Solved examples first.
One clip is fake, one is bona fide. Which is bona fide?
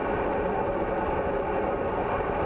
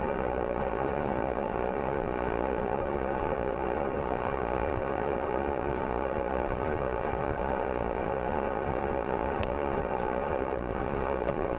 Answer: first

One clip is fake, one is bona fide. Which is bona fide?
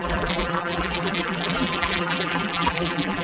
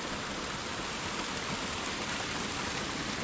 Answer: second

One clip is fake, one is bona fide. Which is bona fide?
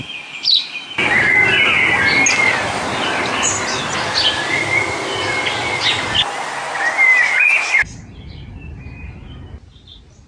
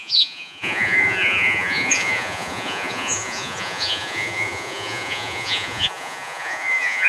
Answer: first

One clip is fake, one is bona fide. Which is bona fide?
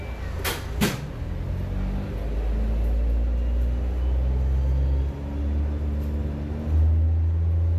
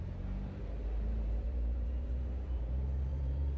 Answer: first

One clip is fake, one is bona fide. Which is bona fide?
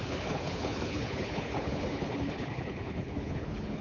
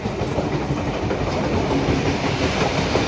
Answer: second